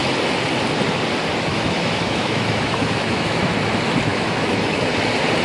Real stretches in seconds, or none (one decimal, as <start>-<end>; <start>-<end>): 0.0-1.5; 3.5-4.1; 4.9-5.4

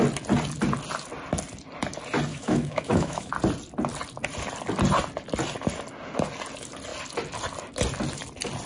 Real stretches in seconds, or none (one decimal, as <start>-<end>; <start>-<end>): 0.0-2.3; 3.3-8.7

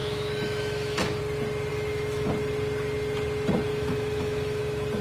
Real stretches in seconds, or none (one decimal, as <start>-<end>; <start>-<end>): 1.2-1.7; 2.3-3.7; 4.6-5.0